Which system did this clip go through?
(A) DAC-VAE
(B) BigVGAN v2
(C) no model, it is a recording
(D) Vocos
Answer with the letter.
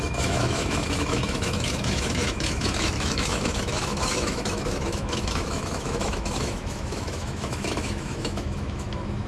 A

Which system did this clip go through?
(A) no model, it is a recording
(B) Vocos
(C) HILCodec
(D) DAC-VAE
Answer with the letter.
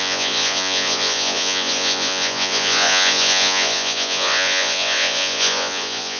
B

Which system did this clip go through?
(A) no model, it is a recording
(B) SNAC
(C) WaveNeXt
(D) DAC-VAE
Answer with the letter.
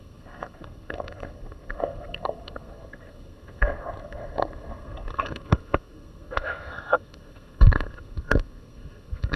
B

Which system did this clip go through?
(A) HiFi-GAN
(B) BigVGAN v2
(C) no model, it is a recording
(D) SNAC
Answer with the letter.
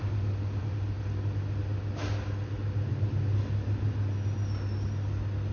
C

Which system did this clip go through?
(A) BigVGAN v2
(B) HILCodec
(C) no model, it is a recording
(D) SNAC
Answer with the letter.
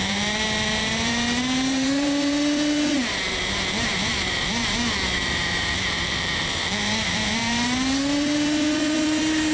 A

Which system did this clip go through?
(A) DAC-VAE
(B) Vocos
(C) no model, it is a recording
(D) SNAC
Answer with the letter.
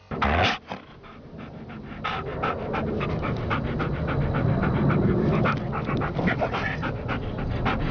C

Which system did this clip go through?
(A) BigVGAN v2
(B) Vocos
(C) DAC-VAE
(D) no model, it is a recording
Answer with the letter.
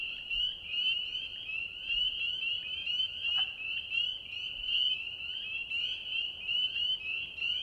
A